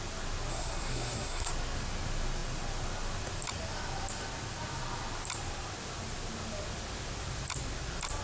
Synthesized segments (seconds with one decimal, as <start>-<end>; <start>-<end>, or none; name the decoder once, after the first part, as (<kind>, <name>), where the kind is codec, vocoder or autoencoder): 0.5-1.5 (codec, SNAC)